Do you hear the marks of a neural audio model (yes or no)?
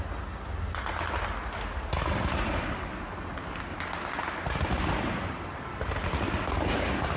no